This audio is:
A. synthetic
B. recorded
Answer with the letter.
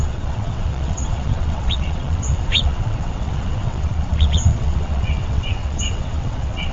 A